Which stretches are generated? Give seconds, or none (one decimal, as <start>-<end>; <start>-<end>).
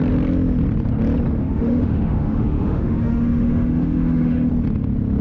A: 1.4-4.5